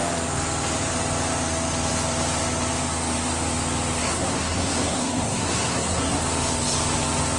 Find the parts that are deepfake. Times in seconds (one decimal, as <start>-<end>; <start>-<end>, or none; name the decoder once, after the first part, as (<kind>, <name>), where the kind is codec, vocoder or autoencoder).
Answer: 4.0-6.2 (codec, SNAC)